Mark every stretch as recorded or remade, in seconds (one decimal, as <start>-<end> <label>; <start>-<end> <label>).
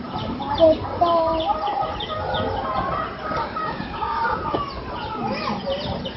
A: 0.0-3.6 recorded; 3.6-4.4 remade; 4.4-6.2 recorded